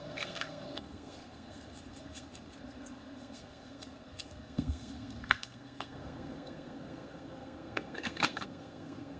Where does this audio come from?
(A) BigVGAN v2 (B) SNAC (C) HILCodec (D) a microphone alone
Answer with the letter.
B